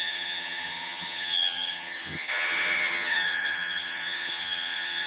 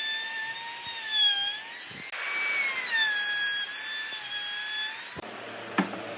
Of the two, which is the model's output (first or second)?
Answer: first